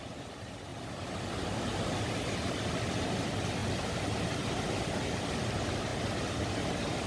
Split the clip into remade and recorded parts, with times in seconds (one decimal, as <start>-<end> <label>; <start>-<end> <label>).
0.0-7.1 recorded

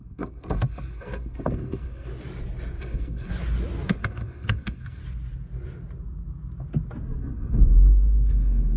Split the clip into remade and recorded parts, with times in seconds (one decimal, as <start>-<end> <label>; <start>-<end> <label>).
0.0-2.1 remade; 2.1-2.8 recorded; 2.8-3.3 remade; 3.3-3.9 recorded; 3.9-5.0 remade; 5.0-7.2 recorded; 7.2-8.8 remade

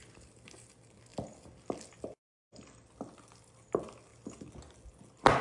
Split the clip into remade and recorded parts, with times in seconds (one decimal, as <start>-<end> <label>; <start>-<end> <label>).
0.0-5.4 recorded